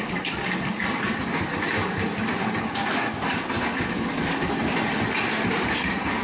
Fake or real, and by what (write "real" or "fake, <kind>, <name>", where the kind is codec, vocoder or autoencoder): real